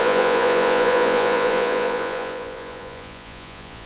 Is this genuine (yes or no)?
no